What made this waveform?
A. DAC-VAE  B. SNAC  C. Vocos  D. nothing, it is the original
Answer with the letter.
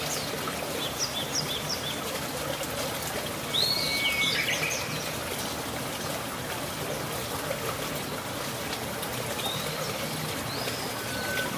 D